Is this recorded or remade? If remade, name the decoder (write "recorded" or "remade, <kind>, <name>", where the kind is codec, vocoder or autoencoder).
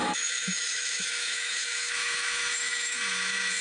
remade, autoencoder, DAC-VAE